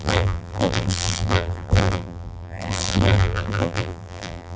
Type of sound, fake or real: fake